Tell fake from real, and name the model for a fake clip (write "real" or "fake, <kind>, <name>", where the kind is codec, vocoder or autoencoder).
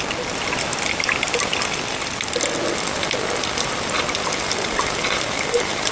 real